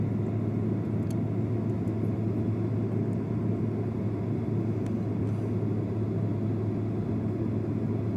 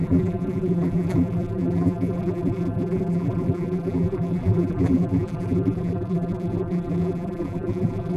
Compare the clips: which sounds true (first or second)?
first